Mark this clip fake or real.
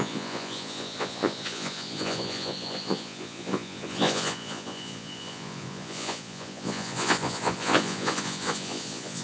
fake